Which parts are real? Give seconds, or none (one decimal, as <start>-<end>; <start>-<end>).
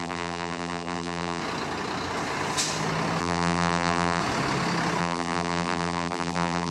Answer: 1.4-3.2; 4.2-5.0